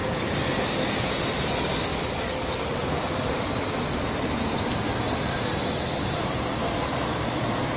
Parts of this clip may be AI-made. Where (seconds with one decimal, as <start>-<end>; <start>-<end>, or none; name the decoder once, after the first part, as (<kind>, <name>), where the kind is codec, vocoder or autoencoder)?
none